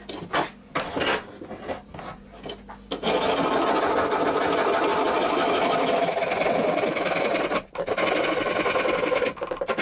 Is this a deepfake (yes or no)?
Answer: no